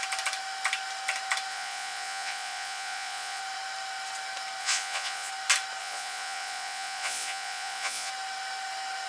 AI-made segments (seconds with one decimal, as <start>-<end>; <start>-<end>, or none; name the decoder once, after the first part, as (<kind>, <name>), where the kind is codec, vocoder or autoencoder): 1.5-3.4 (vocoder, Vocos); 4.6-5.3; 5.8-8.1